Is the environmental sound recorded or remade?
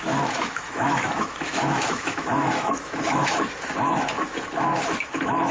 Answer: remade